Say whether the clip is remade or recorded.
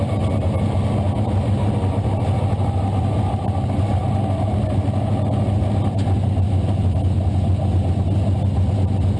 recorded